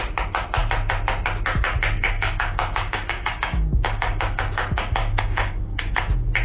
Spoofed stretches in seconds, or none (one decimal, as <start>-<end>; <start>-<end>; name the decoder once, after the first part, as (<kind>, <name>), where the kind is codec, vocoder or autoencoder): 2.0-5.8 (codec, DAC)